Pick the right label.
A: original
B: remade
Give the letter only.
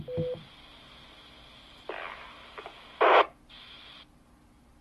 A